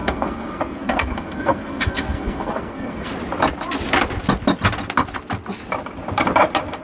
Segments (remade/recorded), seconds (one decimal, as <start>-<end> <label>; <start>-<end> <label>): 0.0-3.1 remade; 3.1-6.8 recorded